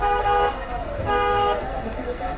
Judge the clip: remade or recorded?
remade